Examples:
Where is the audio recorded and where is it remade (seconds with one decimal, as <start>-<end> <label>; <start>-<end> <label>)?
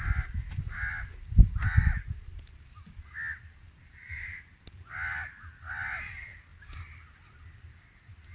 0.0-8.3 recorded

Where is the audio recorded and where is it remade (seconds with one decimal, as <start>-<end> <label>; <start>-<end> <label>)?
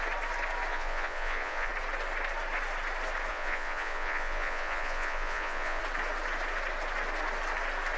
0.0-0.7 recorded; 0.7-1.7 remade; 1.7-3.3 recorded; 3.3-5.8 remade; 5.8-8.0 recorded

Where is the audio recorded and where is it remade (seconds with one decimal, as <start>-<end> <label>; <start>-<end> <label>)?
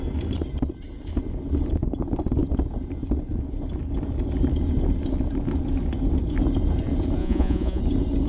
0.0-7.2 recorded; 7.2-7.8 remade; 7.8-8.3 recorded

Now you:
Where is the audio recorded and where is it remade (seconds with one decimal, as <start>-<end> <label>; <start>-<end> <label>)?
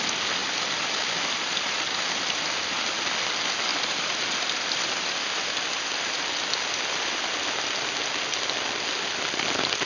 0.0-0.4 recorded; 0.4-2.9 remade; 2.9-3.7 recorded; 3.7-5.0 remade; 5.0-9.9 recorded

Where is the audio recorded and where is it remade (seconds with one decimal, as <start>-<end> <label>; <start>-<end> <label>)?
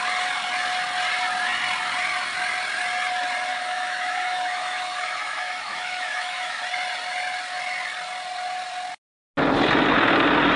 0.0-3.5 recorded; 3.5-6.6 remade; 6.6-10.6 recorded